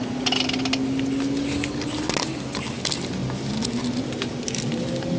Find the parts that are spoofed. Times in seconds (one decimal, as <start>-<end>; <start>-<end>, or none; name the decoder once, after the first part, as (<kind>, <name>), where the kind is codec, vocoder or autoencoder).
none